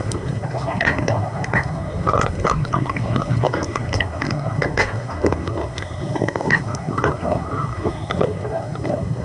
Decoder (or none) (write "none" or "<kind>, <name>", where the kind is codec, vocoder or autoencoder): codec, SNAC